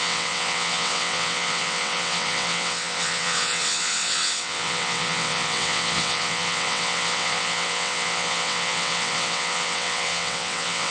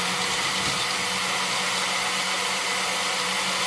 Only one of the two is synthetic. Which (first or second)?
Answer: first